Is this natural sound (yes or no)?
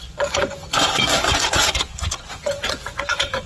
no